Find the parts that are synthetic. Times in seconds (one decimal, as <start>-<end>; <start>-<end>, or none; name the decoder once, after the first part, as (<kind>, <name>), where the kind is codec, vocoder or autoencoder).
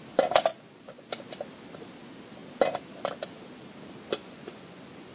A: 0.5-1.1 (vocoder, Vocos); 4.2-5.1